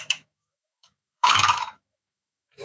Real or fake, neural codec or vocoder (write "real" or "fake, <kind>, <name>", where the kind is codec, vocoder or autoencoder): fake, autoencoder, DAC-VAE